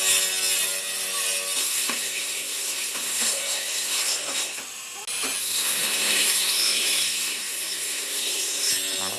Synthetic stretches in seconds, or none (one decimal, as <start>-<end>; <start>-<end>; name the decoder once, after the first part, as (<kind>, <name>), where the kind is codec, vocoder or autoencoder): 1.6-4.6 (codec, SNAC); 5.4-8.7